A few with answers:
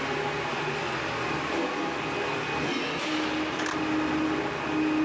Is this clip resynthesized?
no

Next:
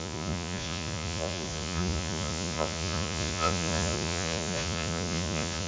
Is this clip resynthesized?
yes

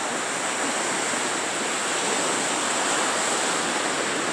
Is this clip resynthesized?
no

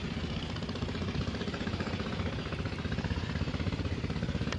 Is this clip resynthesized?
no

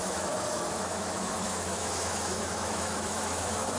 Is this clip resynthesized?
yes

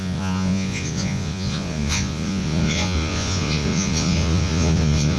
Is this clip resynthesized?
yes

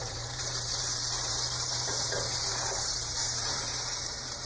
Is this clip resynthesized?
yes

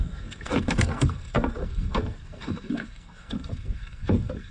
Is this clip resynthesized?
yes